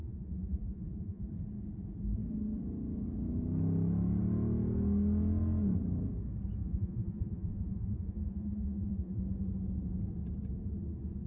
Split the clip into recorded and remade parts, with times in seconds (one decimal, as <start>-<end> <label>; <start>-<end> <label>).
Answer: 0.0-1.3 remade; 1.3-6.6 recorded; 6.6-9.2 remade; 9.2-11.3 recorded